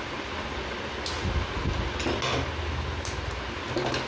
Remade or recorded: recorded